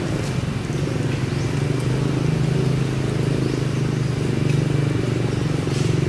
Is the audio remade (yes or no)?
no